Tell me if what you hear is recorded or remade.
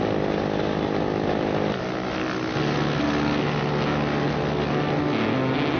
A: recorded